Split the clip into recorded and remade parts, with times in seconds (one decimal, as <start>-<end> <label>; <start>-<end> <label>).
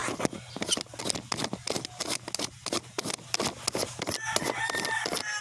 0.0-5.4 recorded